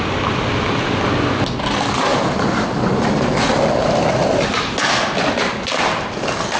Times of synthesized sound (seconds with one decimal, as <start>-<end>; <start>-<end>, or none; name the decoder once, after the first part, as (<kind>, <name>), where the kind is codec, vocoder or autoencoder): none